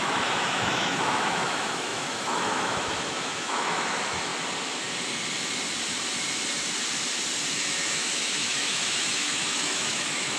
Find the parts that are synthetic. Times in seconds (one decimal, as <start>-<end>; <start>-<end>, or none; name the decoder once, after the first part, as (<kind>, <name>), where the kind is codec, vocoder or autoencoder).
0.0-4.3 (autoencoder, DAC-VAE); 7.5-10.4